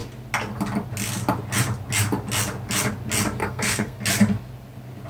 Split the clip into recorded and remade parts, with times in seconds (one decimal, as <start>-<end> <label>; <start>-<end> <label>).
0.0-3.4 recorded; 3.4-4.0 remade; 4.0-5.1 recorded